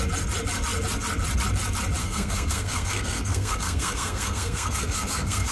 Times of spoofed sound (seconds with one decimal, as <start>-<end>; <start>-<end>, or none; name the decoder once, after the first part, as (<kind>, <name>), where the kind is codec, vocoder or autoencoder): 2.0-5.5 (codec, SNAC)